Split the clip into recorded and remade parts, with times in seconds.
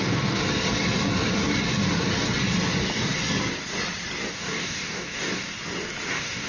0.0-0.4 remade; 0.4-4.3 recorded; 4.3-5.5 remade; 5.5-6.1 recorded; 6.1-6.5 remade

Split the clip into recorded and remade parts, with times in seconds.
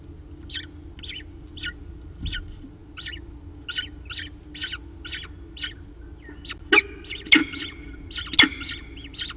0.0-9.4 recorded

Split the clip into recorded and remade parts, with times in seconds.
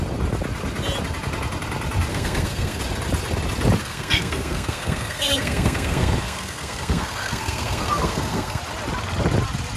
0.0-2.1 recorded; 2.1-2.8 remade; 2.8-3.8 recorded; 3.8-8.6 remade; 8.6-9.8 recorded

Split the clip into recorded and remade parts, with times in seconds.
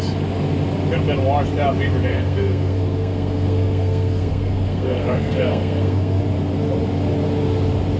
0.0-2.1 recorded; 2.1-6.2 remade; 6.2-8.0 recorded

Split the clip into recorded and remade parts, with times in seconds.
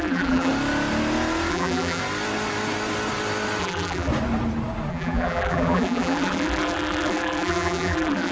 0.0-0.5 remade; 0.5-1.5 recorded; 1.5-2.0 remade; 2.0-3.6 recorded; 3.6-4.1 remade; 4.1-4.9 recorded; 4.9-8.3 remade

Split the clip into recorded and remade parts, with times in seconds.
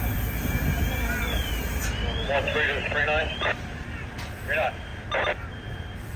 0.0-2.0 remade; 2.0-3.2 recorded; 3.2-4.9 remade; 4.9-5.8 recorded; 5.8-6.2 remade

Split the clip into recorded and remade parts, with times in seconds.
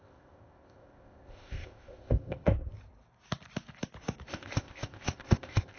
0.0-2.5 remade; 2.5-4.3 recorded; 4.3-5.8 remade